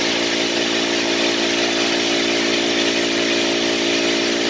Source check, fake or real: real